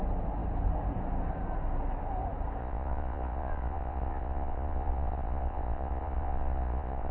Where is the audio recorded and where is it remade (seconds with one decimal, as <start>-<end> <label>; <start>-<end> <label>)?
0.0-2.6 recorded; 2.6-7.1 remade